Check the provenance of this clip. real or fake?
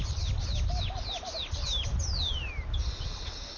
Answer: real